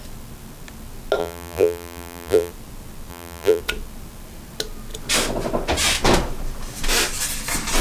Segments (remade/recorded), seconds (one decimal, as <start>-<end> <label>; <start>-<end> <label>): 0.0-1.2 recorded; 1.2-2.5 remade; 2.5-3.1 recorded; 3.1-3.6 remade; 3.6-7.8 recorded